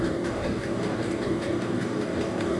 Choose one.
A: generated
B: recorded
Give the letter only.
A